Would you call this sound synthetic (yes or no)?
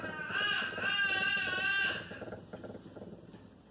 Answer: no